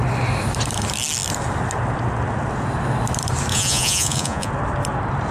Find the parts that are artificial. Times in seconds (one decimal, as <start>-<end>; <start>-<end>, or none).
3.5-4.5

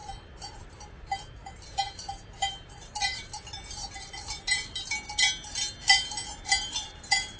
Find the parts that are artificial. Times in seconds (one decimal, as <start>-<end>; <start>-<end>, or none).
0.0-4.4; 5.8-7.4

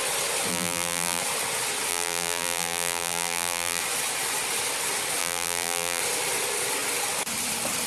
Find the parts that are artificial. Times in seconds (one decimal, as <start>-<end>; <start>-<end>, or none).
0.5-1.2; 1.9-3.8; 5.2-6.0

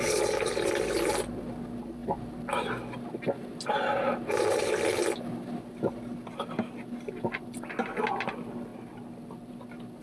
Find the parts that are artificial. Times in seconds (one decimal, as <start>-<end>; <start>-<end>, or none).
none

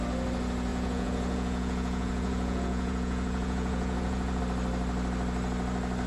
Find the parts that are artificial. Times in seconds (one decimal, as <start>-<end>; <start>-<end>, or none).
0.7-4.4

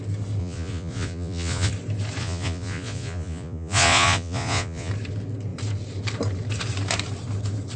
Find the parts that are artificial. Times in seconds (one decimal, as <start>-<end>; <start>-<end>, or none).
0.4-1.7; 2.2-4.9

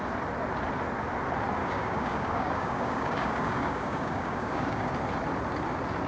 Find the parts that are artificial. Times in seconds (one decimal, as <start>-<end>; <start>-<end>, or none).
1.6-4.9

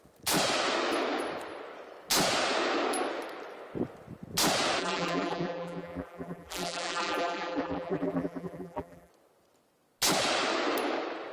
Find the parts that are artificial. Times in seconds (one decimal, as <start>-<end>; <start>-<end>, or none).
4.8-9.1